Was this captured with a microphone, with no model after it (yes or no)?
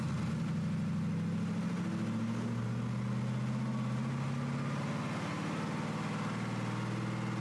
yes